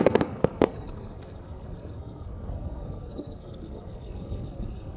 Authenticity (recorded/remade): remade